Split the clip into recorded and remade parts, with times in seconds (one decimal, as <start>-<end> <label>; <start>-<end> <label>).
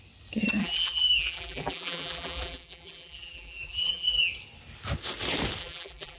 0.0-0.6 recorded; 0.6-4.3 remade; 4.3-5.6 recorded; 5.6-6.2 remade